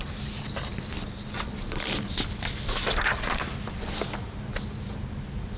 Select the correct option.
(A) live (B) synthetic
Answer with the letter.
A